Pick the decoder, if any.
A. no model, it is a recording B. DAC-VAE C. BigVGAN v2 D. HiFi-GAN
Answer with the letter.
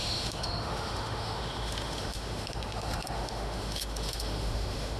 B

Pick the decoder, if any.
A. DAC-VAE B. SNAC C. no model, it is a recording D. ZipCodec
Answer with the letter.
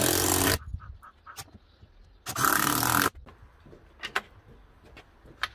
C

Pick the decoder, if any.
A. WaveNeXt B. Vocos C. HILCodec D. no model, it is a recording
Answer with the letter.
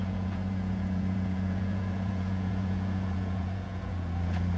B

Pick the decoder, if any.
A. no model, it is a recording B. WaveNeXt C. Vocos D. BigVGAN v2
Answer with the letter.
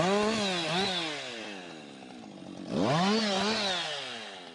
A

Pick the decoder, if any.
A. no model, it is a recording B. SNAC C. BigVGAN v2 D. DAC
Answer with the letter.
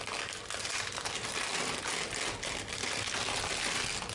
A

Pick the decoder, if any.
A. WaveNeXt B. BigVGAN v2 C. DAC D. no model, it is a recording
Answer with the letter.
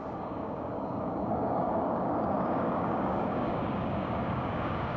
C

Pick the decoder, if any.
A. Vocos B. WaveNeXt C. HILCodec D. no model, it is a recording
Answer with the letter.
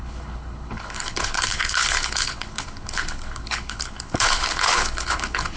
C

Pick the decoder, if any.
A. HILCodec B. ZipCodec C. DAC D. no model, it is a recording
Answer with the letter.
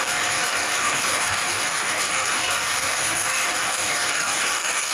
C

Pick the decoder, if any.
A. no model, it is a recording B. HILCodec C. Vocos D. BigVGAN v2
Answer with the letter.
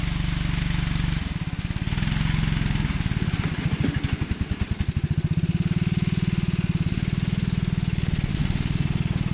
A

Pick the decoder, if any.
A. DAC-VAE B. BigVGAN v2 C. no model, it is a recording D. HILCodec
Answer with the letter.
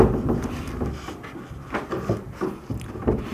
C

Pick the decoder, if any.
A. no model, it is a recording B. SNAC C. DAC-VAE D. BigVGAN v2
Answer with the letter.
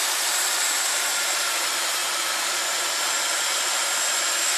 D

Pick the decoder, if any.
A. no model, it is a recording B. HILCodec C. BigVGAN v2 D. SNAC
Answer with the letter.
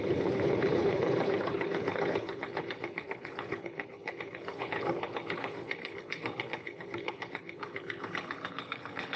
B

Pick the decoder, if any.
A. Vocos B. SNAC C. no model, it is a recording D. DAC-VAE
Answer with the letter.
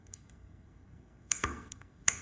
B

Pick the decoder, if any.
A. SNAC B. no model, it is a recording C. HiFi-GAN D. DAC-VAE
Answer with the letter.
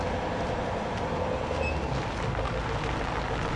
B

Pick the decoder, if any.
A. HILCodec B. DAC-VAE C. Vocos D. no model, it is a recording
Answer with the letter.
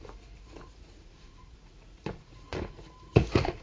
C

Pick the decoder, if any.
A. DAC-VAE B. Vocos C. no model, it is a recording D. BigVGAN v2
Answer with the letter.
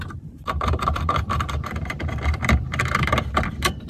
D